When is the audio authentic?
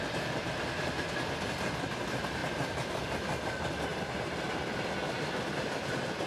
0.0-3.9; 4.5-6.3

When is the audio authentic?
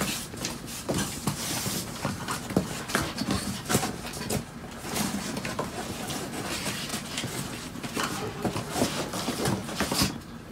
0.0-9.6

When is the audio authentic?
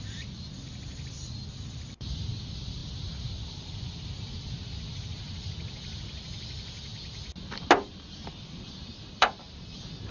6.9-7.4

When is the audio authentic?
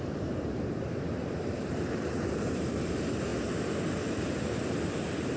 3.3-4.9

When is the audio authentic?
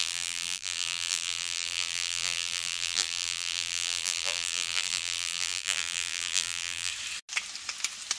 6.9-8.2